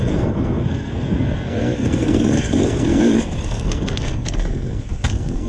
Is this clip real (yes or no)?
no